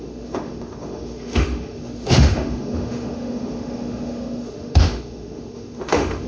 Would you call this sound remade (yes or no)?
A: yes